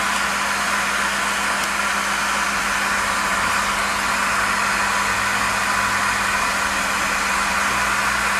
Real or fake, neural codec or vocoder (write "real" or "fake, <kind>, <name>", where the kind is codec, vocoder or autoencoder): real